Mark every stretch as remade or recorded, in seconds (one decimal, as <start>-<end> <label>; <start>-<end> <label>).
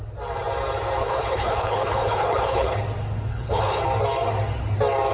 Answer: 0.0-1.0 recorded; 1.0-2.8 remade; 2.8-3.3 recorded; 3.3-3.8 remade; 3.8-5.1 recorded